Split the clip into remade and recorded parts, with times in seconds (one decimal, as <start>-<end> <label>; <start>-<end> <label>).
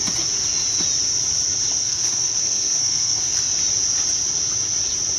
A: 0.0-1.8 recorded; 1.8-3.4 remade; 3.4-5.2 recorded